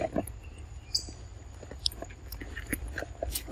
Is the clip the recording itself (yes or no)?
yes